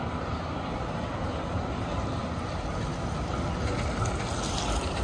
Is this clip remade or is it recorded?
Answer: recorded